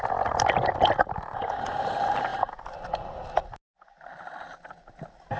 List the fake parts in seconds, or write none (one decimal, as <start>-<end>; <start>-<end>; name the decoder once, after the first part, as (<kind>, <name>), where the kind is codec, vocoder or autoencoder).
none